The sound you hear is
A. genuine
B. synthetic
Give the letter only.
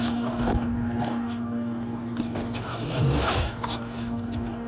B